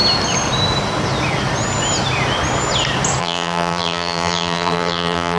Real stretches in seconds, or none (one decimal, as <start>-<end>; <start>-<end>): 0.0-3.2